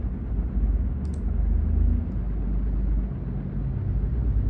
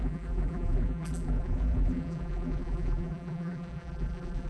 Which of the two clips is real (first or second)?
first